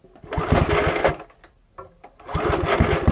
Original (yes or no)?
yes